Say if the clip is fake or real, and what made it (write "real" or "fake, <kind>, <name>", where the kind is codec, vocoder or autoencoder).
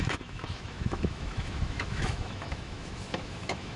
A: fake, autoencoder, DAC-VAE